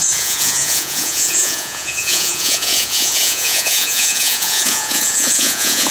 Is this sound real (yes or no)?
no